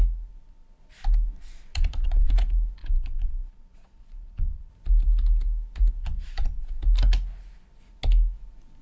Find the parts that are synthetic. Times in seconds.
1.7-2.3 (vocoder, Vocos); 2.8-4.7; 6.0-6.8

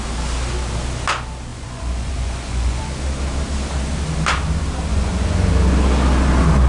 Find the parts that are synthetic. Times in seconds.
1.5-2.8 (vocoder, Vocos); 4.9-5.5

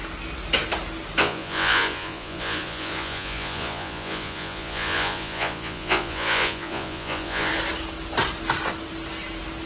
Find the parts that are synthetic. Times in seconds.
1.2-7.5 (vocoder, Vocos)